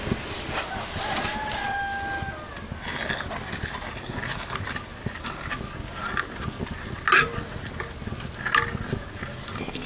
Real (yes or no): yes